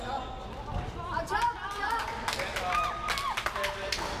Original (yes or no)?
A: yes